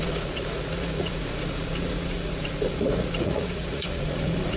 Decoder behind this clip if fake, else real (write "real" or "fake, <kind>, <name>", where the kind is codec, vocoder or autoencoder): fake, vocoder, Vocos